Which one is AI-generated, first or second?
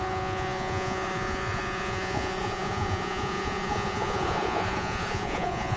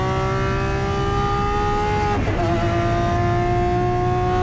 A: first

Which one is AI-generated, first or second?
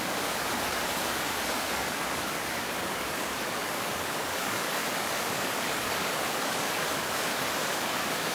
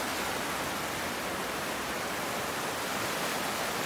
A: first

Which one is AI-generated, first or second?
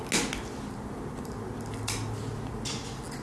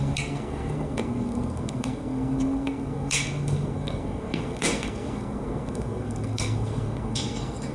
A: second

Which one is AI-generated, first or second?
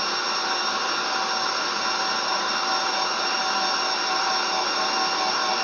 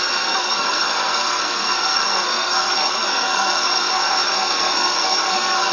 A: second